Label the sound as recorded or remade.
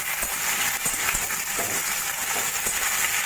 recorded